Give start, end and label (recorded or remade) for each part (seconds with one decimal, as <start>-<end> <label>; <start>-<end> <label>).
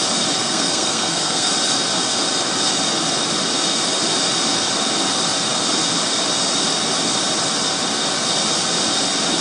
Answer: 0.0-0.4 recorded; 0.4-1.5 remade; 1.5-9.4 recorded